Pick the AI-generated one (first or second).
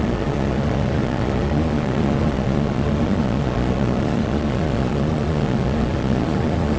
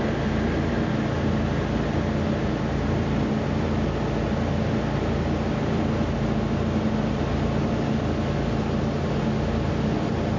first